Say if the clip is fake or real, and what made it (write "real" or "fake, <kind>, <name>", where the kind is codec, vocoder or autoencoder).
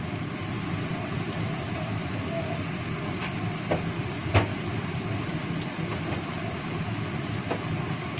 real